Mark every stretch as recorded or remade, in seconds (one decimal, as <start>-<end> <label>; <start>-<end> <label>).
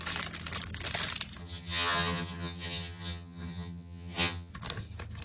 0.0-1.4 recorded; 1.4-4.5 remade; 4.5-5.2 recorded